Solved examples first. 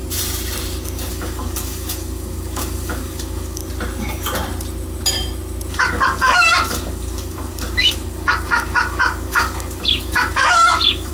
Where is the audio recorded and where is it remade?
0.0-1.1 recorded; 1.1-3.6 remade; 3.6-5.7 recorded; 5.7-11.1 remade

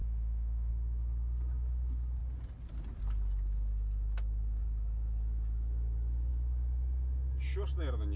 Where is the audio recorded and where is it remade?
0.0-0.7 remade; 0.7-8.2 recorded

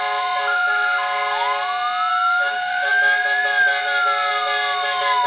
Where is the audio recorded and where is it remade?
0.0-2.1 recorded; 2.1-2.9 remade; 2.9-5.3 recorded

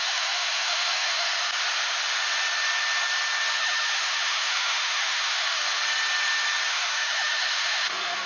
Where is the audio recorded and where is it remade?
0.0-1.3 remade; 1.3-3.6 recorded; 3.6-5.6 remade; 5.6-6.7 recorded; 6.7-8.3 remade

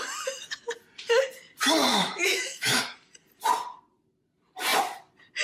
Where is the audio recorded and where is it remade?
0.0-1.9 recorded; 1.9-2.8 remade; 2.8-5.4 recorded

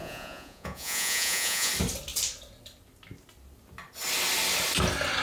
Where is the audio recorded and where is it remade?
0.0-1.7 remade; 1.7-5.2 recorded